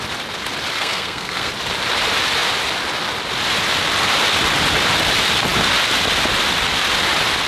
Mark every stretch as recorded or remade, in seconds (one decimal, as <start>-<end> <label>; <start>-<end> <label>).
0.0-0.7 recorded; 0.7-1.5 remade; 1.5-7.5 recorded